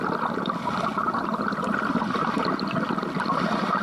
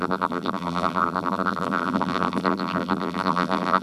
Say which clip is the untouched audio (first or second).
first